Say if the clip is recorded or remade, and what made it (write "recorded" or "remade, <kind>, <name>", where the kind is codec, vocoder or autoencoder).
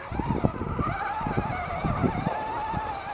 recorded